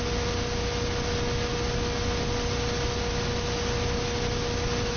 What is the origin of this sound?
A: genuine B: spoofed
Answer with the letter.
B